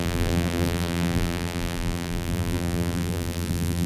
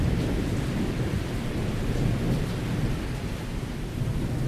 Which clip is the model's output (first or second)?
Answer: first